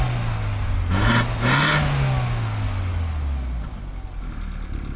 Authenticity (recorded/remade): recorded